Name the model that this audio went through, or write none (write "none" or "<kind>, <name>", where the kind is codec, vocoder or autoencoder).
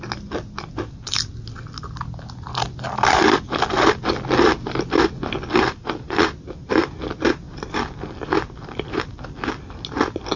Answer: none